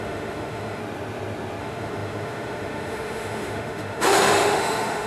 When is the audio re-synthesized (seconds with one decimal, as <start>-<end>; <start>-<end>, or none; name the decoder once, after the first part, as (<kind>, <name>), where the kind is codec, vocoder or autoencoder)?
0.0-0.8 (autoencoder, DAC-VAE); 1.6-5.1